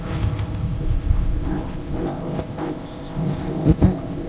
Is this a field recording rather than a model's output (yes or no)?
no